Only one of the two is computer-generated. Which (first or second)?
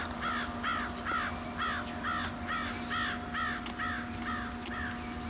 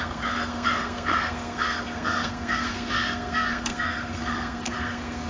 second